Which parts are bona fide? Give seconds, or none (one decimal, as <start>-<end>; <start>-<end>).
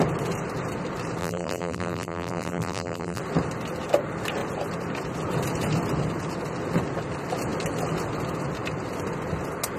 0.0-1.2; 3.2-9.8